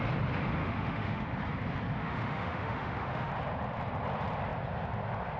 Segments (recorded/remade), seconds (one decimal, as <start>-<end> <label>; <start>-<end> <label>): 0.0-0.6 recorded; 0.6-1.3 remade; 1.3-2.0 recorded; 2.0-3.3 remade; 3.3-5.4 recorded